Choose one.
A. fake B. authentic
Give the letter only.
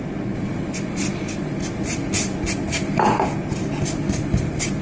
B